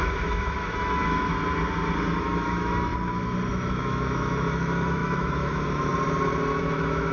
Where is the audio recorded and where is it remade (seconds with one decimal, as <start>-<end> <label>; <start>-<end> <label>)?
0.0-1.3 remade; 1.3-2.2 recorded; 2.2-2.9 remade; 2.9-3.5 recorded; 3.5-5.9 remade; 5.9-6.6 recorded; 6.6-7.1 remade